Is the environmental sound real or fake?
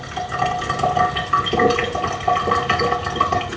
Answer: real